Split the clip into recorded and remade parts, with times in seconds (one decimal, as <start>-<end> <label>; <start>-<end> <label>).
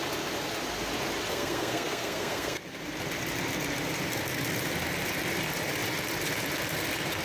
0.0-1.3 recorded; 1.3-2.6 remade; 2.6-7.2 recorded